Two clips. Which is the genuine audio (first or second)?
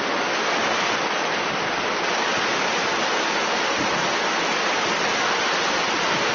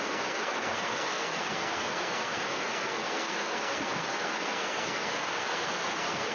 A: first